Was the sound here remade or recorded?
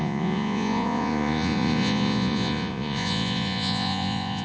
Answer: remade